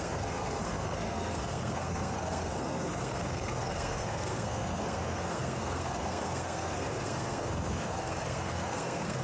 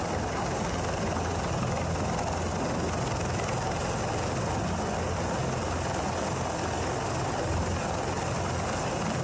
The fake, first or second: first